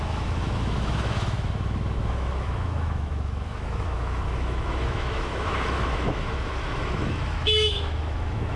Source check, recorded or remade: remade